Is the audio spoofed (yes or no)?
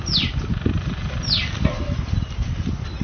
no